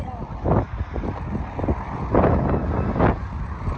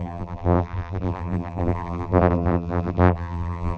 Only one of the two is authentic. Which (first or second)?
first